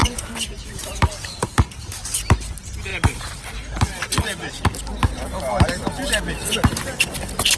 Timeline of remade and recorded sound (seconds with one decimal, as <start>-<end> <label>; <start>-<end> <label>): 0.0-2.0 remade; 2.0-7.6 recorded